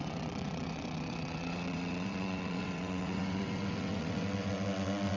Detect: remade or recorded remade